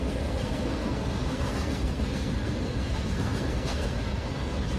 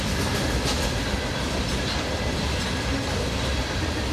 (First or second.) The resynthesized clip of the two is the first